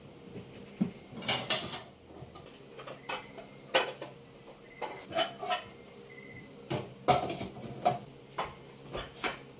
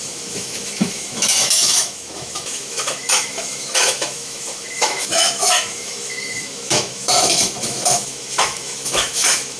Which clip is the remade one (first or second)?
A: second